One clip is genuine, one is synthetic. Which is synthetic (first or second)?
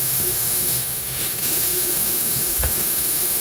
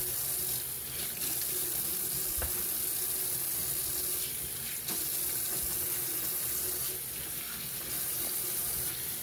first